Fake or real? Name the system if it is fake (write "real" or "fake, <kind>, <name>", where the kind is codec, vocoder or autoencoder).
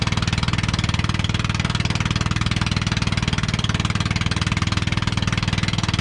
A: real